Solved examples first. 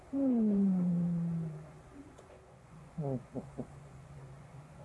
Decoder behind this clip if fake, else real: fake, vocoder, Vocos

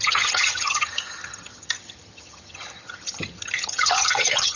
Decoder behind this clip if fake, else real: fake, vocoder, HiFi-GAN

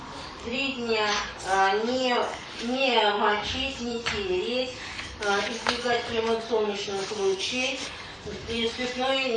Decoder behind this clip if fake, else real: fake, codec, DAC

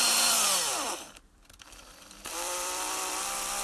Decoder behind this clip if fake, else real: fake, vocoder, BigVGAN v2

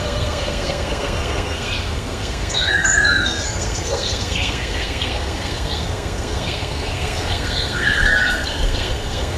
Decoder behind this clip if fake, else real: fake, codec, SNAC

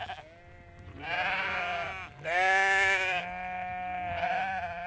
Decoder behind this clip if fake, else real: real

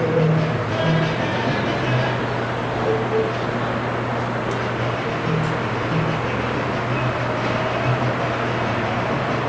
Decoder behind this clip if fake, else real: real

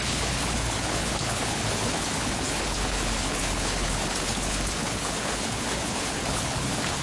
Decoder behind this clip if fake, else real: fake, codec, HILCodec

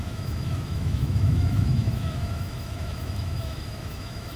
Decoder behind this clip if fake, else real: fake, autoencoder, DAC-VAE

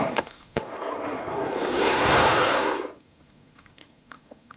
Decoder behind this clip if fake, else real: fake, codec, SNAC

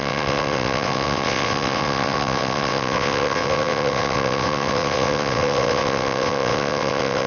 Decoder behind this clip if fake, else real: fake, vocoder, WaveNeXt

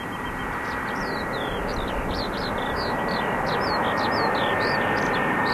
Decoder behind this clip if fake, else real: real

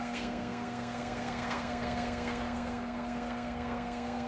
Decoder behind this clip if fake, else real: fake, codec, SNAC